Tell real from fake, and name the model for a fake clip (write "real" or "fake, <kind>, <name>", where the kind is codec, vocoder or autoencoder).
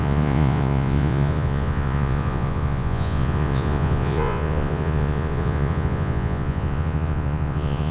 fake, vocoder, Vocos